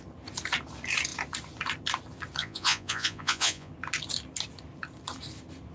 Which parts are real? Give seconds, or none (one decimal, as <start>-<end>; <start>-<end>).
0.0-2.4; 3.7-5.7